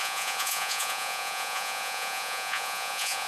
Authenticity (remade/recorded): remade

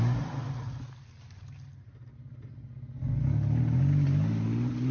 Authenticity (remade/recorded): recorded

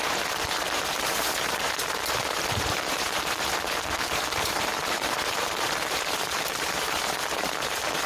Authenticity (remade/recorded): remade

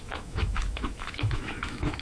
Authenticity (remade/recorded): remade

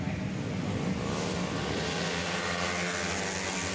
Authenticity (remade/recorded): recorded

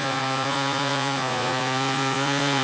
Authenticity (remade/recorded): remade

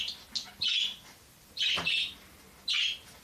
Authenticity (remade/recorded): recorded